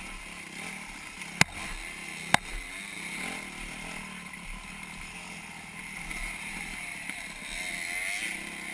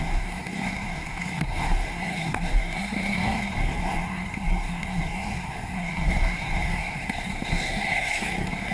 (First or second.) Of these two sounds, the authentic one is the first